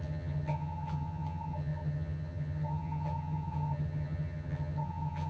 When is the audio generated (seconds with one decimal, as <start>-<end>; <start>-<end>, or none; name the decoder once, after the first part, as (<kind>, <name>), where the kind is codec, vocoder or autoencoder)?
0.0-5.3 (vocoder, HiFi-GAN)